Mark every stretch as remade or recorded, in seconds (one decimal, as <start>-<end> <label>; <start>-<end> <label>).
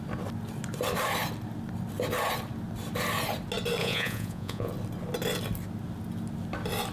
0.0-3.8 recorded; 3.8-4.7 remade; 4.7-6.9 recorded